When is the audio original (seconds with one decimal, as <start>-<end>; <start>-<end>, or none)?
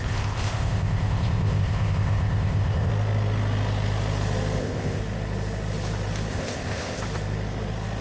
2.9-4.6; 5.0-6.3; 7.0-8.0